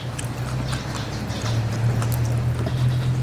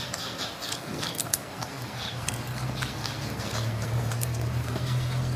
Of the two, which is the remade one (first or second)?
second